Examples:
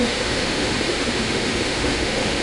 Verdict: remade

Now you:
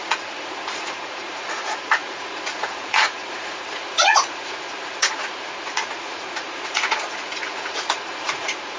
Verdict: remade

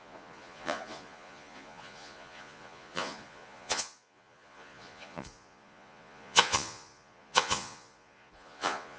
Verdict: remade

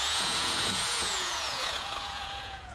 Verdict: remade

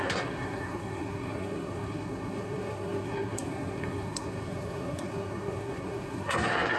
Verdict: remade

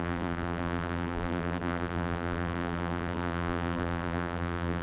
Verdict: remade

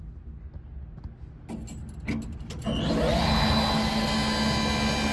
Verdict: recorded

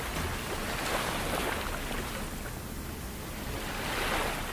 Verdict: recorded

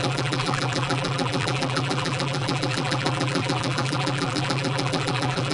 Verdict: remade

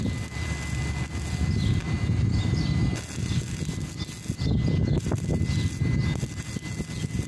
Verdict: recorded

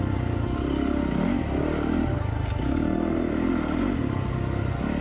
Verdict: recorded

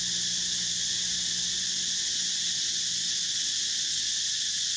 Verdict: recorded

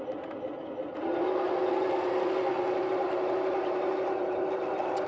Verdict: recorded